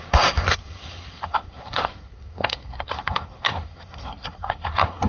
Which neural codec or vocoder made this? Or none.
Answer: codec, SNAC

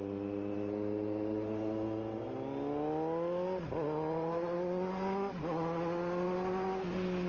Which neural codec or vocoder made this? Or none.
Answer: none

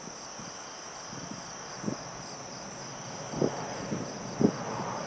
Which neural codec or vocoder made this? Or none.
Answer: none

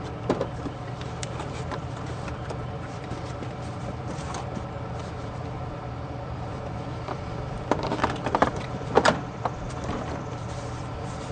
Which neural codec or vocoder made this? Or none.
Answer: vocoder, BigVGAN v2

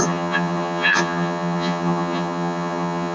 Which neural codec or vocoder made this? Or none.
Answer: vocoder, HiFi-GAN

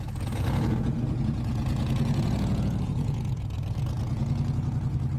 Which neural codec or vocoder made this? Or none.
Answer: vocoder, Vocos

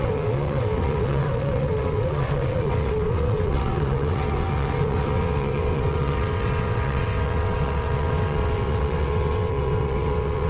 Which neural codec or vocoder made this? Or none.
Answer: vocoder, WaveNeXt